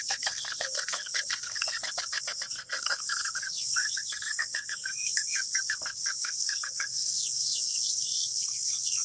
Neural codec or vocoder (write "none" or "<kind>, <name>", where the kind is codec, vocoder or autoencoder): codec, SNAC